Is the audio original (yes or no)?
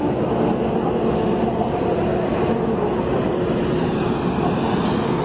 yes